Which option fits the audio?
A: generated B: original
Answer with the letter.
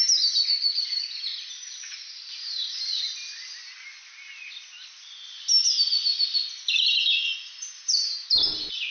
B